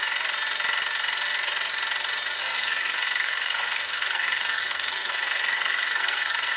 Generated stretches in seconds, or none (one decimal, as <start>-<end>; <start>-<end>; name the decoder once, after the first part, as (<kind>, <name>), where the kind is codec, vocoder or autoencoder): 2.4-6.6 (codec, SNAC)